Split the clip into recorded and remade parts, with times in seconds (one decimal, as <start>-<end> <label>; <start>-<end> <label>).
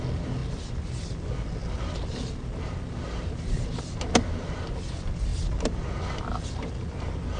0.0-7.4 recorded